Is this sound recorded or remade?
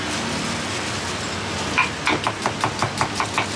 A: recorded